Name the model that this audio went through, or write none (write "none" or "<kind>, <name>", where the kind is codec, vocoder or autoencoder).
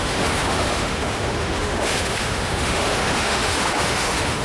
autoencoder, DAC-VAE